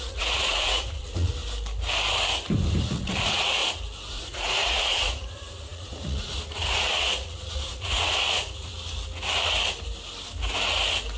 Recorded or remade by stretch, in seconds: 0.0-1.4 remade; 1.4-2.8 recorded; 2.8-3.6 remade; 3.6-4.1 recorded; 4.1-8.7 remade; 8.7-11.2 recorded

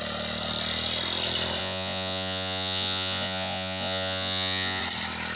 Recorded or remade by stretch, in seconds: 0.0-1.6 recorded; 1.6-4.8 remade; 4.8-5.4 recorded

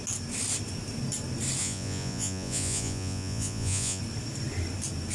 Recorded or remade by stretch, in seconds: 0.0-1.6 recorded; 1.6-4.0 remade; 4.0-5.1 recorded

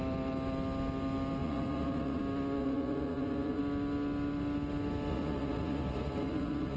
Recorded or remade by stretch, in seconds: 0.0-1.4 recorded; 1.4-2.2 remade; 2.2-2.6 recorded; 2.6-3.6 remade; 3.6-5.1 recorded; 5.1-6.8 remade

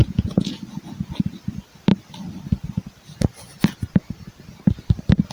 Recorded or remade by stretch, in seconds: 0.0-0.6 remade; 0.6-5.3 recorded

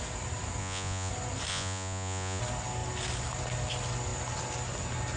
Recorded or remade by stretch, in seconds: 0.0-0.6 recorded; 0.6-1.1 remade; 1.1-1.5 recorded; 1.5-2.4 remade; 2.4-5.2 recorded

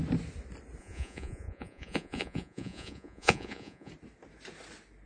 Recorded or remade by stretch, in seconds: 0.0-0.8 recorded; 0.8-3.9 remade; 3.9-5.1 recorded